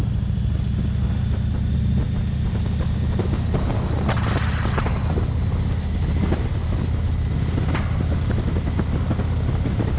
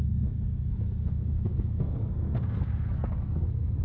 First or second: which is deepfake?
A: second